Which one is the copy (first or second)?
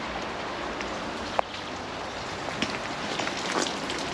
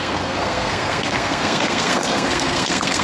second